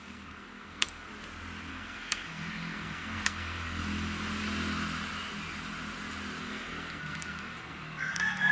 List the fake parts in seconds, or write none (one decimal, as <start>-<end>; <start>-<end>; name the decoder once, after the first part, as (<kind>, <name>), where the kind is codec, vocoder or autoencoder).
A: 0.0-1.1 (codec, SNAC); 1.7-3.8; 6.4-8.5